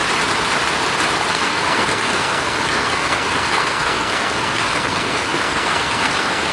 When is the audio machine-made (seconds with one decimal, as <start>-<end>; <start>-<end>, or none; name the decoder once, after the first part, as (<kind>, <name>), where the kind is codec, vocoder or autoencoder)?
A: 1.3-6.5 (codec, SNAC)